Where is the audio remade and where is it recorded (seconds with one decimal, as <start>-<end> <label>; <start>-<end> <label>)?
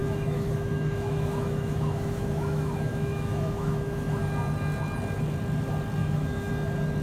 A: 0.0-4.2 remade; 4.2-6.0 recorded; 6.0-6.5 remade; 6.5-7.0 recorded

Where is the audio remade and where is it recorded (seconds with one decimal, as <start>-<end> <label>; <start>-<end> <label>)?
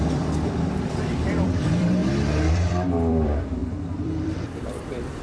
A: 0.0-2.0 remade; 2.0-2.5 recorded; 2.5-5.2 remade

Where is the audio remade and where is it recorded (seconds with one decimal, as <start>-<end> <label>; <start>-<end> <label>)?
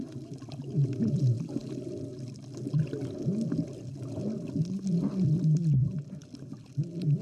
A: 0.0-7.2 recorded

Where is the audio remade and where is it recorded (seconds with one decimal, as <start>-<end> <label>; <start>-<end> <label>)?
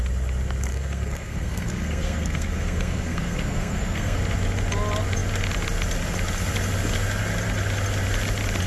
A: 0.0-0.7 recorded; 0.7-4.2 remade; 4.2-8.7 recorded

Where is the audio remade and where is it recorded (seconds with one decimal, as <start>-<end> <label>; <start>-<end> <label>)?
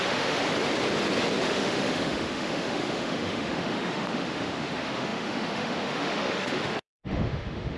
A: 0.0-0.4 remade; 0.4-1.4 recorded; 1.4-7.8 remade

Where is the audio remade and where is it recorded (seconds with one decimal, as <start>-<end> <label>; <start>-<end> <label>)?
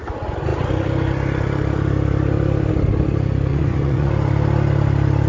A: 0.0-3.5 recorded; 3.5-4.1 remade; 4.1-5.3 recorded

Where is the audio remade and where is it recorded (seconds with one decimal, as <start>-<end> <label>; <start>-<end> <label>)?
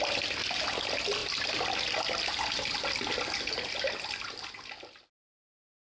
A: 0.0-5.8 recorded